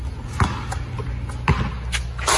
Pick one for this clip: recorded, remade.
recorded